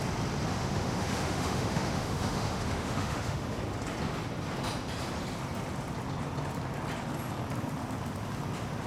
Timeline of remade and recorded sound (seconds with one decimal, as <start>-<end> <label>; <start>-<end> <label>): 0.0-0.5 recorded; 0.5-3.6 remade; 3.6-8.9 recorded